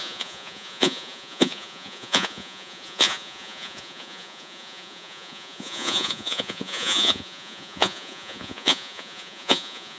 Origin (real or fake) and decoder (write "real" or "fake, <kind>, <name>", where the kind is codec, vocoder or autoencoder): fake, vocoder, Vocos